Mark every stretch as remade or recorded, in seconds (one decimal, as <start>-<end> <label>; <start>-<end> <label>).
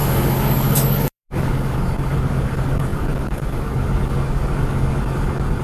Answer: 0.0-5.6 remade